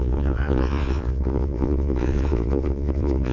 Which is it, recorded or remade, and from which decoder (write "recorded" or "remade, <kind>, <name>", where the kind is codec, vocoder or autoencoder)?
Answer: remade, vocoder, Vocos